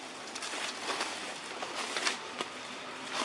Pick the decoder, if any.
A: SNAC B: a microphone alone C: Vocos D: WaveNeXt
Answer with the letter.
B